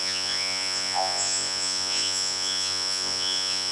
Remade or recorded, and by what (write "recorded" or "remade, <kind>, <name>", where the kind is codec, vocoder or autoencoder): remade, vocoder, Vocos